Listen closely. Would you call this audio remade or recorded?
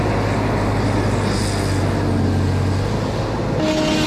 recorded